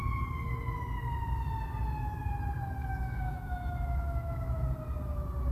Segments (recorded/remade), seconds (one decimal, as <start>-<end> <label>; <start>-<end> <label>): 0.0-2.8 recorded; 2.8-4.7 remade; 4.7-5.5 recorded